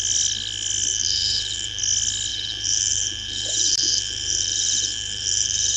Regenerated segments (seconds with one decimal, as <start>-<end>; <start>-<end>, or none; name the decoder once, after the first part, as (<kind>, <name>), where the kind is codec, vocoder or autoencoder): 0.9-1.8 (vocoder, BigVGAN v2); 2.3-5.8